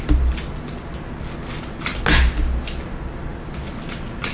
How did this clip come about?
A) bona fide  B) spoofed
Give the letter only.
A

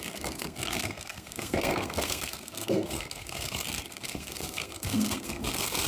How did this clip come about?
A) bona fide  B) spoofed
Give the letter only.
B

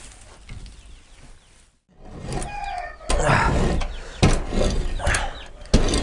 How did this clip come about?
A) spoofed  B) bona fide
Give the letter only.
B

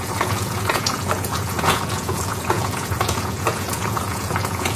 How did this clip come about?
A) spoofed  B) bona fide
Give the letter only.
A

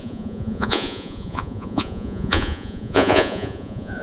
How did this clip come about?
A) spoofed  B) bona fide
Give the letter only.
A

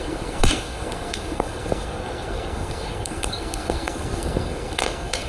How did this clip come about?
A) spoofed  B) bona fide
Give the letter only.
A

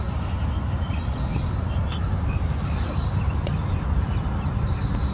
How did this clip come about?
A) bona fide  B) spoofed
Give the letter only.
A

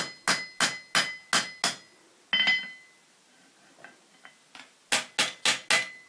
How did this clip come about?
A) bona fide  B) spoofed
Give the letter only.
A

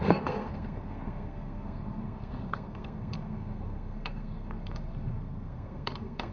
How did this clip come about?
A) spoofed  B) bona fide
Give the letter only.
A